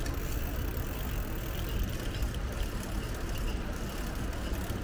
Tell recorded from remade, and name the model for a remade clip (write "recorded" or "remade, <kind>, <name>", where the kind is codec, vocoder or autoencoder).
recorded